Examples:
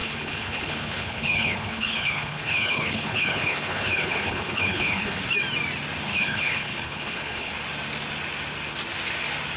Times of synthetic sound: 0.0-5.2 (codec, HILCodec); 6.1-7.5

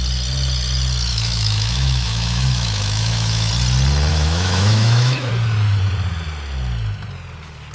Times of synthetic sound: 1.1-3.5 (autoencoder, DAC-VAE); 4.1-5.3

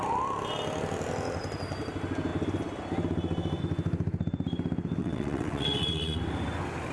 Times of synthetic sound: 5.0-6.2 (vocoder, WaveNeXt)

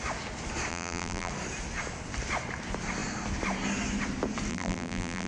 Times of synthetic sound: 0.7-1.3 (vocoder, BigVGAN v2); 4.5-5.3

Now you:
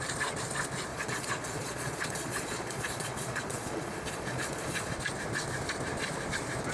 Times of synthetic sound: 0.9-4.9 (vocoder, Vocos)